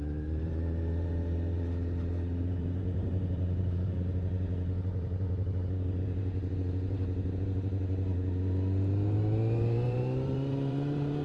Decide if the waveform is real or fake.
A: fake